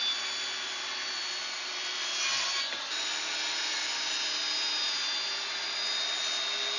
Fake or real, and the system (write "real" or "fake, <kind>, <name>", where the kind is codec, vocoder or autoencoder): real